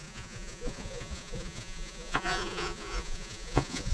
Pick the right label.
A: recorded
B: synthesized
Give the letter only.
B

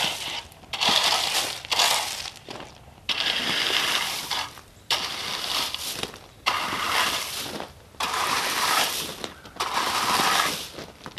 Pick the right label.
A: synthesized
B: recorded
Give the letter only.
A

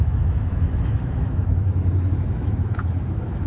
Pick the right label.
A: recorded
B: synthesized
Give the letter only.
B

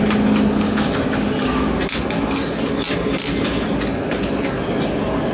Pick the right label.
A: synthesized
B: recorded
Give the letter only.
B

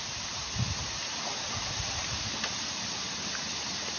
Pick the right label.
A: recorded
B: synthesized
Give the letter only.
A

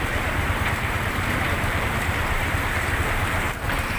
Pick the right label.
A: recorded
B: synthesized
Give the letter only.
B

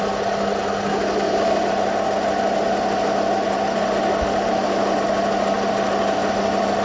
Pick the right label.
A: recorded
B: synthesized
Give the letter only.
A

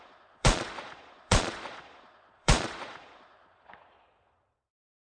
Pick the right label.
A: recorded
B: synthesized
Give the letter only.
B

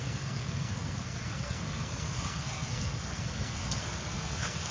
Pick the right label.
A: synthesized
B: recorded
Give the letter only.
A